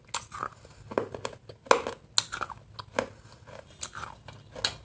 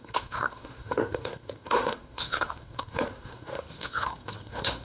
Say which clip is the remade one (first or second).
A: second